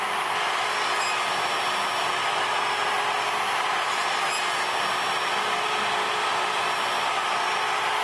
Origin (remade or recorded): recorded